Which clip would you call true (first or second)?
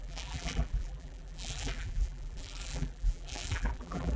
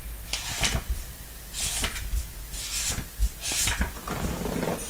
second